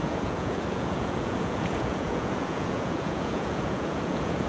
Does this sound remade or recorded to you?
remade